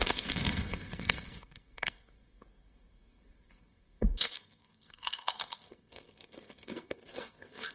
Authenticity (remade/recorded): remade